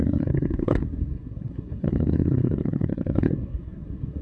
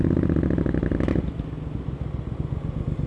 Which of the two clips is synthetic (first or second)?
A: first